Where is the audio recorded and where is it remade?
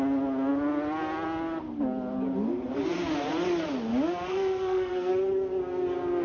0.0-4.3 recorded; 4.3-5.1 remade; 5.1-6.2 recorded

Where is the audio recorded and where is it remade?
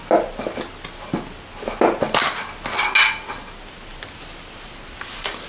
0.0-5.5 recorded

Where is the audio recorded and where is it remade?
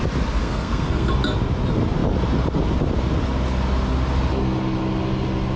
0.0-0.4 recorded; 0.4-1.1 remade; 1.1-5.6 recorded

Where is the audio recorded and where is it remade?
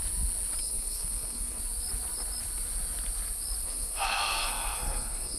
0.0-0.6 recorded; 0.6-1.6 remade; 1.6-3.6 recorded; 3.6-5.4 remade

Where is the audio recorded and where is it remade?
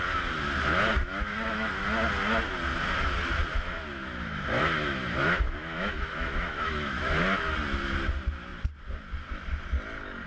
0.0-1.0 recorded; 1.0-1.8 remade; 1.8-3.5 recorded; 3.5-7.5 remade; 7.5-10.3 recorded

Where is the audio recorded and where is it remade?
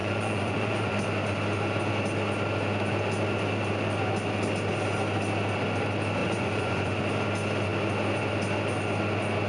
0.0-0.9 remade; 0.9-6.2 recorded; 6.2-7.0 remade; 7.0-9.5 recorded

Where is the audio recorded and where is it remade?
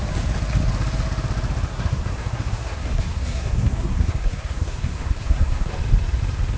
0.0-1.7 recorded; 1.7-5.7 remade; 5.7-6.6 recorded